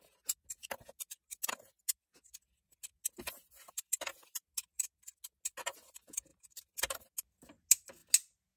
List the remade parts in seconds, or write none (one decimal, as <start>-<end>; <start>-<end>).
none